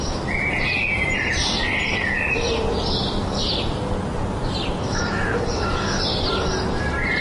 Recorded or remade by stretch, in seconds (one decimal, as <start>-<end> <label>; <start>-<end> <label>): 0.0-4.8 recorded; 4.8-6.0 remade; 6.0-7.2 recorded